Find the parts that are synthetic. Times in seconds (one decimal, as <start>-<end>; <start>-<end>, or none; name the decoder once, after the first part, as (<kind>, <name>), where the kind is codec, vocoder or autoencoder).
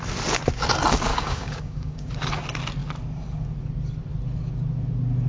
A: 1.1-2.1 (codec, DAC)